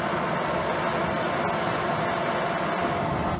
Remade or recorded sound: recorded